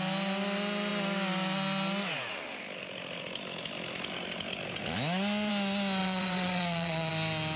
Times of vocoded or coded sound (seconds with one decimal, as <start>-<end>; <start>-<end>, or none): 6.0-7.1